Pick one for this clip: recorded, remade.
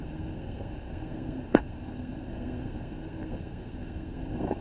remade